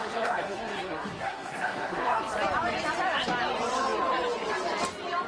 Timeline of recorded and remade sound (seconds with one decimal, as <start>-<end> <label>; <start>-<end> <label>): 0.0-2.2 remade; 2.2-5.3 recorded